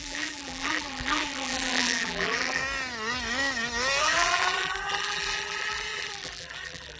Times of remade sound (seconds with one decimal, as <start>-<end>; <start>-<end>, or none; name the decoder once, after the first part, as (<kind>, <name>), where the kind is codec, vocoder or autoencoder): 0.0-2.6 (vocoder, BigVGAN v2); 4.0-7.0